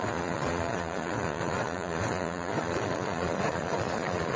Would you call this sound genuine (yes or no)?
no